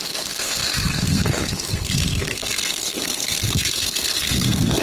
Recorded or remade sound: remade